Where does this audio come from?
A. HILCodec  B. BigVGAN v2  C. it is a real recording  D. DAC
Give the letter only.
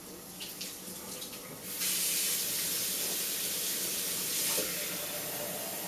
C